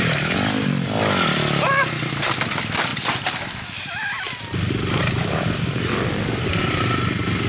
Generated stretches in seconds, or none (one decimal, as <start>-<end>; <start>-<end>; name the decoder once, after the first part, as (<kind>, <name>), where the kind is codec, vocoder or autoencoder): 0.0-7.5 (vocoder, BigVGAN v2)